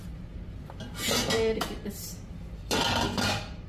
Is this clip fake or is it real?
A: real